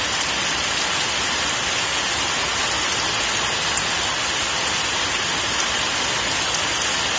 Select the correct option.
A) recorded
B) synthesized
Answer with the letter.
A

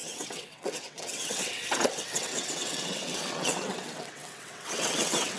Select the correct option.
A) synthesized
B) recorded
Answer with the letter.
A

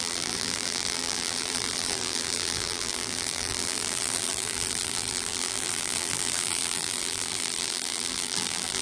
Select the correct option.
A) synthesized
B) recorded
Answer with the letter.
A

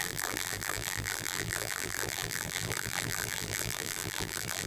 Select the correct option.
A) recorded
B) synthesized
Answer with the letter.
B